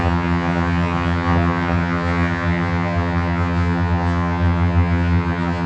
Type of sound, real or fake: fake